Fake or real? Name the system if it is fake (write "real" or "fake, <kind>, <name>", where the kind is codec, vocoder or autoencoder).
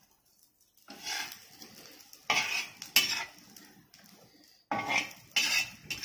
real